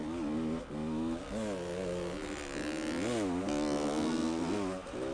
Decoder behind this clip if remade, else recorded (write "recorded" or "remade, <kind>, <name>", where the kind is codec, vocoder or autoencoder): recorded